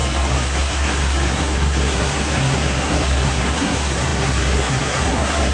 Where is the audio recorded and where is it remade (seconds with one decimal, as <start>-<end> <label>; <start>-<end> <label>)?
0.0-5.5 remade